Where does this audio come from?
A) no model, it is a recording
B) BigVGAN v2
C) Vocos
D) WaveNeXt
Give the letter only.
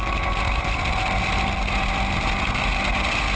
B